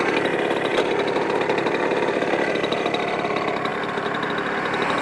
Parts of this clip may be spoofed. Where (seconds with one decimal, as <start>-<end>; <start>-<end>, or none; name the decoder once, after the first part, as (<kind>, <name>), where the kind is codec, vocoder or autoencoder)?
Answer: none